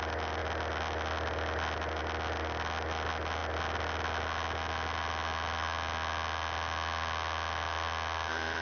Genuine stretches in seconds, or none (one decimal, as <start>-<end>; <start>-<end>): 0.0-8.6